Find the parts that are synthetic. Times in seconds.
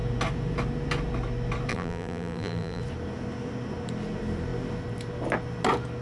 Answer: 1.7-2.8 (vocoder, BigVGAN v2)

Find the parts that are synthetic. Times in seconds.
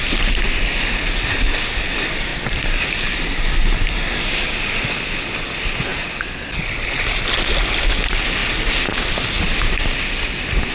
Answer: none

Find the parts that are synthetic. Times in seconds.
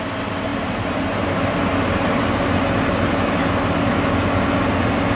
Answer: 0.5-3.4 (vocoder, BigVGAN v2)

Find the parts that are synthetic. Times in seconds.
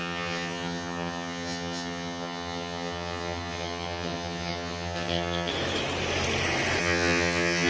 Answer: 0.0-5.5 (vocoder, HiFi-GAN); 6.8-7.7